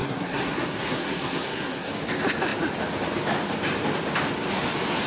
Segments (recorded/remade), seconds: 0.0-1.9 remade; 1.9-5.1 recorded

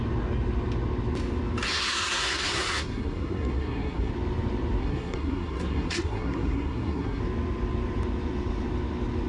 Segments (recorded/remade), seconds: 0.0-1.7 recorded; 1.7-4.1 remade; 4.1-4.8 recorded; 4.8-7.2 remade; 7.2-9.3 recorded

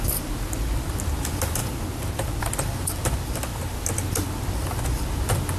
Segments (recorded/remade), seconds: 0.0-5.6 recorded

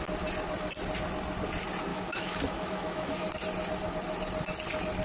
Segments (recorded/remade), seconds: 0.0-1.9 recorded; 1.9-3.3 remade; 3.3-5.0 recorded